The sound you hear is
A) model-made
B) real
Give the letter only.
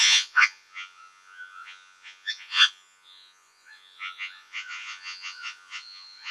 A